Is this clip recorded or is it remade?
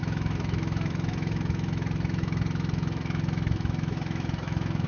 remade